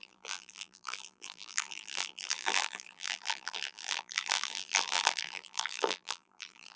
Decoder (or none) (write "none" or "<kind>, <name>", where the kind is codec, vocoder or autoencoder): vocoder, BigVGAN v2